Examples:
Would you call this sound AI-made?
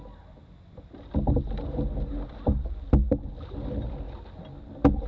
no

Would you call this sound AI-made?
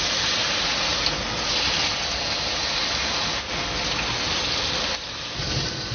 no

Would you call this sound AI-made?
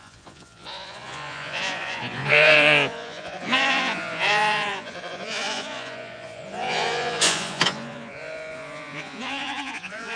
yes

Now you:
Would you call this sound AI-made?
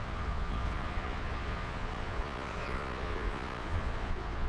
yes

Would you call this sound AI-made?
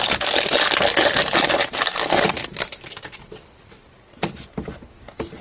no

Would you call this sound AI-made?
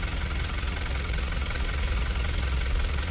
yes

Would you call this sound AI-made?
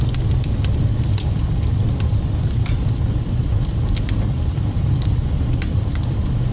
no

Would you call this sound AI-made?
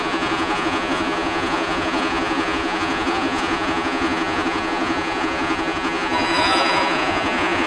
yes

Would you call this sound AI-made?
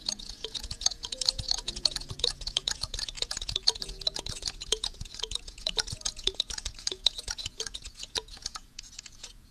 yes